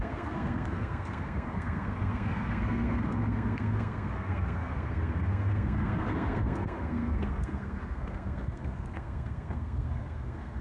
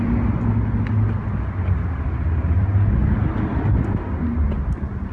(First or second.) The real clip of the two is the second